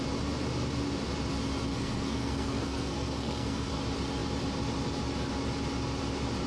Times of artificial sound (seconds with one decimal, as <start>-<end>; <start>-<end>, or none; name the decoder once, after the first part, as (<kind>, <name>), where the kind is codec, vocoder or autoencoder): 1.7-3.8 (codec, SNAC)

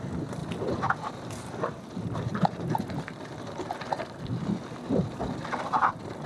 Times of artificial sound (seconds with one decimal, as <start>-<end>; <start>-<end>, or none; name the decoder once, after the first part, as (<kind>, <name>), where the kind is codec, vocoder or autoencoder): none

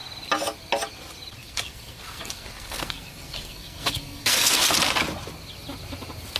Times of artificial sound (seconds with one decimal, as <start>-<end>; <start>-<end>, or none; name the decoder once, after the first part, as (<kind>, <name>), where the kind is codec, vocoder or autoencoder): 1.4-4.6 (codec, SNAC)

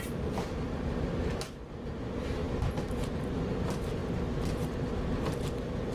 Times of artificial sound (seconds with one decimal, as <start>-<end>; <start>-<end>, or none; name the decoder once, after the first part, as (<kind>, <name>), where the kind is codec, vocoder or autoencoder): none

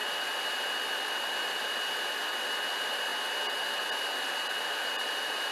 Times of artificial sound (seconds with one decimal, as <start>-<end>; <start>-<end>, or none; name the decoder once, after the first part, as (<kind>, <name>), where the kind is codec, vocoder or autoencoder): none

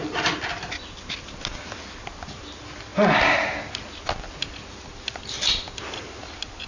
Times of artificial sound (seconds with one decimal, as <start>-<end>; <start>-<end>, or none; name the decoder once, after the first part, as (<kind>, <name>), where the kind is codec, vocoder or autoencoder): none